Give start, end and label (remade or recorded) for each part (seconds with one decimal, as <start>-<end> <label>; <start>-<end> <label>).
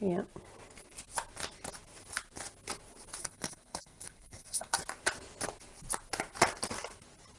0.0-3.2 recorded; 3.2-4.8 remade; 4.8-7.4 recorded